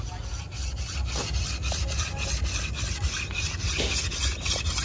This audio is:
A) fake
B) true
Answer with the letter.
B